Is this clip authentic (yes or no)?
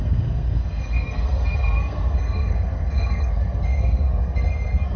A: no